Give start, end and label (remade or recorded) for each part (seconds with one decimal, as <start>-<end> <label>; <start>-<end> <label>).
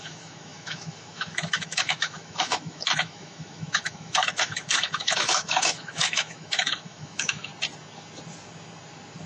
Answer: 0.0-7.5 remade; 7.5-9.3 recorded